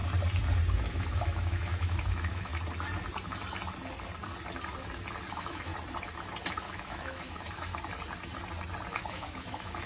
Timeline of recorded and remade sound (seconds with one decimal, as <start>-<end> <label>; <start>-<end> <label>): 0.0-0.8 recorded; 0.8-2.5 remade; 2.5-5.3 recorded; 5.3-5.7 remade; 5.7-6.5 recorded; 6.5-7.7 remade; 7.7-8.9 recorded; 8.9-9.9 remade